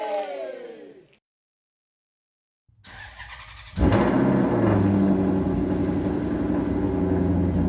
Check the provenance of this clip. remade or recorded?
recorded